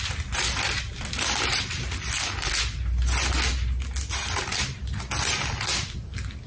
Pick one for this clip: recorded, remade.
recorded